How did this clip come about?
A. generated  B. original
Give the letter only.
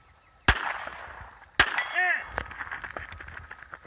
B